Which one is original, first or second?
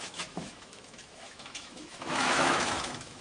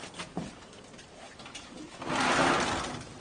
second